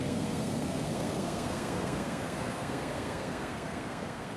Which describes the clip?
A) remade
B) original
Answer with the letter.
A